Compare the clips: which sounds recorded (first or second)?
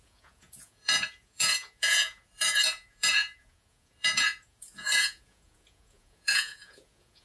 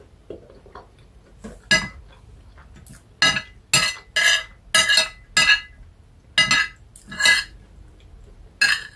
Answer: second